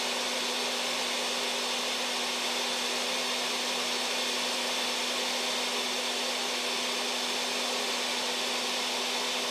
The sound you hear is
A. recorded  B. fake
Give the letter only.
A